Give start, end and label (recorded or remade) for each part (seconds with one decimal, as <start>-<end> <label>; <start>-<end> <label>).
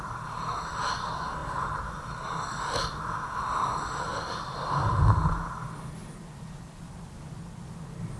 0.0-8.2 recorded